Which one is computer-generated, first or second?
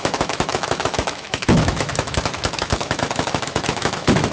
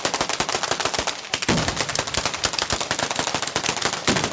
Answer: first